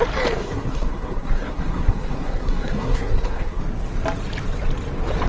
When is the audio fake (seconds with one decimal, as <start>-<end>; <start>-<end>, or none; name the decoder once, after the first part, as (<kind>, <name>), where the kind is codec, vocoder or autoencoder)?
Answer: 0.4-3.6 (codec, SNAC)